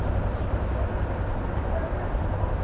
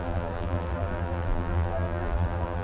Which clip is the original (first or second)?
first